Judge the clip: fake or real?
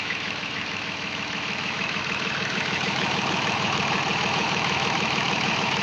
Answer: fake